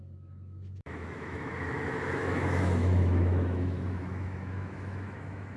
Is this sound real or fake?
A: fake